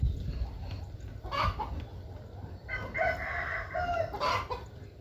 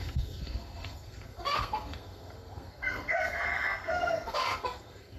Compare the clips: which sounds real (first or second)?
first